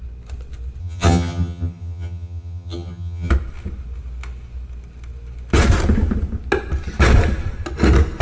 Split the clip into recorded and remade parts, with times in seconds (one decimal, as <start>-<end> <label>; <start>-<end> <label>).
0.0-0.8 recorded; 0.8-3.3 remade; 3.3-8.2 recorded